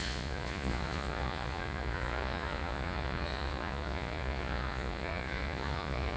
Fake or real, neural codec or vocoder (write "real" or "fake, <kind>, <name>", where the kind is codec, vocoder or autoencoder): fake, vocoder, Vocos